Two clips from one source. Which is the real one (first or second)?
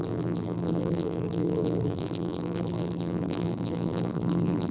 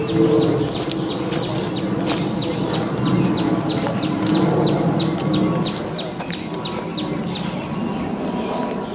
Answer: second